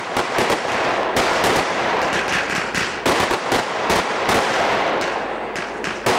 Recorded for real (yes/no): yes